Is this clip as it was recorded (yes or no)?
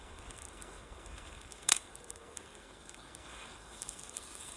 no